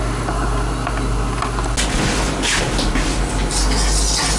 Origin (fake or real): real